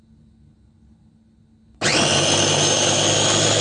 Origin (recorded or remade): recorded